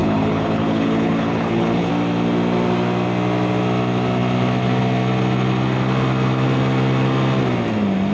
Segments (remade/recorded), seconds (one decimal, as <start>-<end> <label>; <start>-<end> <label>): 0.0-1.9 remade; 1.9-8.1 recorded